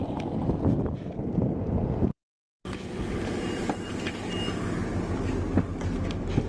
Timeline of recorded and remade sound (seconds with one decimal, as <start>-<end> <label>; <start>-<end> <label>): 0.0-2.1 recorded; 2.1-2.5 remade; 2.5-6.5 recorded

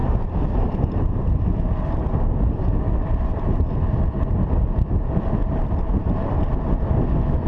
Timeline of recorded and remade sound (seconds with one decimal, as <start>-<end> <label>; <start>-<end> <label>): 0.0-7.5 recorded